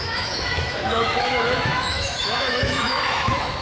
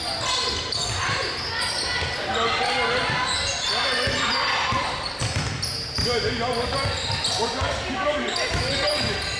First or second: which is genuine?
second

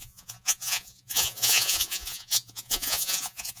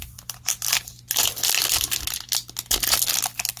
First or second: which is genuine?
second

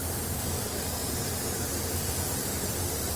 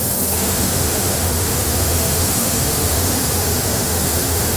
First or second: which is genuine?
first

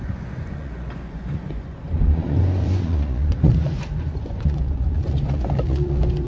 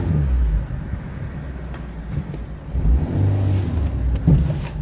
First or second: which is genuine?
second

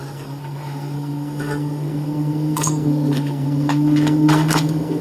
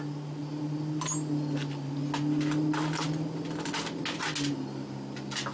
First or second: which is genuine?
second